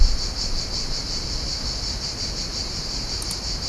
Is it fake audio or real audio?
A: real